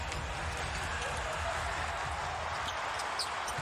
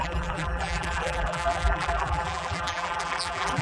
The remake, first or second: second